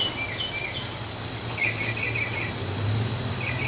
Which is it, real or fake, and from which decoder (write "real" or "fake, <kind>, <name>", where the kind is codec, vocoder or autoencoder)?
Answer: real